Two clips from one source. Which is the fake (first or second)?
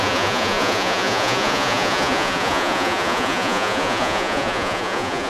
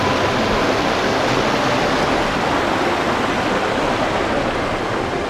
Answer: first